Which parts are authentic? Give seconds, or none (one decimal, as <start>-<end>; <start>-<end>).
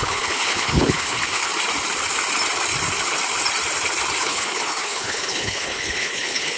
1.5-4.2